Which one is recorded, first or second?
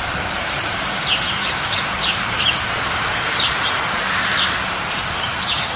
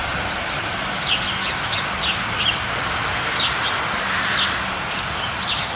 second